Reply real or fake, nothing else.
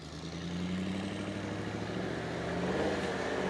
real